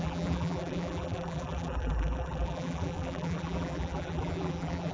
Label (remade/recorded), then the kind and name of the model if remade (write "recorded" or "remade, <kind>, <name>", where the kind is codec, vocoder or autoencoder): remade, vocoder, BigVGAN v2